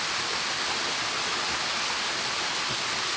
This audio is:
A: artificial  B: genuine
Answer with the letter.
B